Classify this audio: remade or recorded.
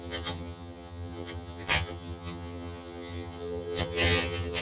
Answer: remade